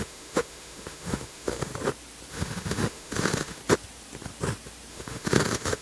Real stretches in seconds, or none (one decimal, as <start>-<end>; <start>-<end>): 1.7-2.3; 3.6-4.9